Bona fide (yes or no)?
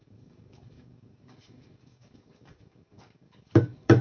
no